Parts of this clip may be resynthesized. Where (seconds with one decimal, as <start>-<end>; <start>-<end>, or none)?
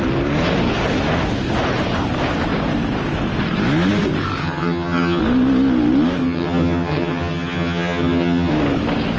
4.4-5.2; 6.2-8.5